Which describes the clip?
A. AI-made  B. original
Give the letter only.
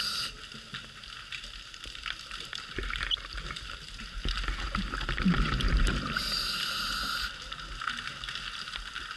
B